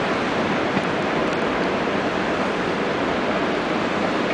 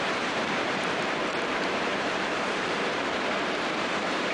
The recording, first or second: first